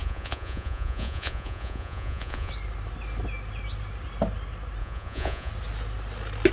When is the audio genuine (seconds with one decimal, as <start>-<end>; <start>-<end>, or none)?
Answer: 2.5-4.8; 5.5-6.5